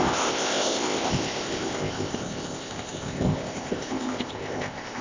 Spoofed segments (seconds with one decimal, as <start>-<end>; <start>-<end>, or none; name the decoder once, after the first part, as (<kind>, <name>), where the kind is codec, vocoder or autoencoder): 0.0-5.0 (codec, ZipCodec)